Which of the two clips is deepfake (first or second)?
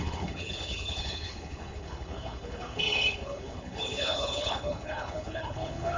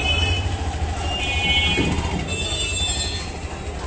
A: first